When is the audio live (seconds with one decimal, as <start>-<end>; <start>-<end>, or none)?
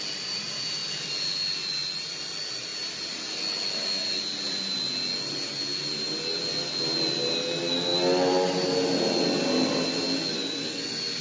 0.0-11.2